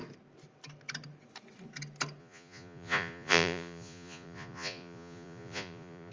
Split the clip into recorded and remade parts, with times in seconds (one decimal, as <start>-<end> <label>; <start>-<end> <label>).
0.0-2.2 recorded; 2.2-6.1 remade